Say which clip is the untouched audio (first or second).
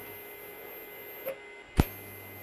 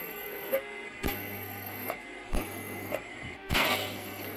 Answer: first